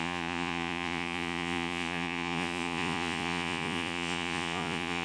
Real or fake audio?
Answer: fake